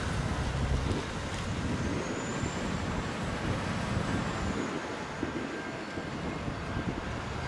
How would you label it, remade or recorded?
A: recorded